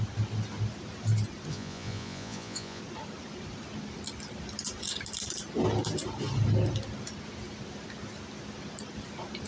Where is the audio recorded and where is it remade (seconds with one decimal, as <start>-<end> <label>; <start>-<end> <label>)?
0.0-1.5 recorded; 1.5-2.8 remade; 2.8-9.5 recorded